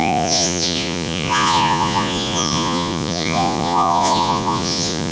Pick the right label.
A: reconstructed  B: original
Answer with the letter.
A